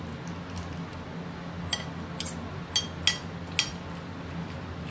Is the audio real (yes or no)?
yes